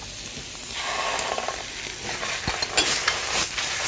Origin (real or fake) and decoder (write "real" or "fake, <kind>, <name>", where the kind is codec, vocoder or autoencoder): real